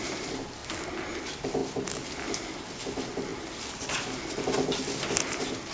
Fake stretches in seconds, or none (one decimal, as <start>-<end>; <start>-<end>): none